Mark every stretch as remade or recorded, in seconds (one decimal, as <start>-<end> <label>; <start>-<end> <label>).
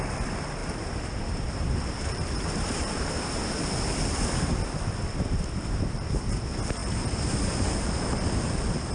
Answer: 0.0-0.6 recorded; 0.6-3.4 remade; 3.4-6.8 recorded; 6.8-8.0 remade; 8.0-8.9 recorded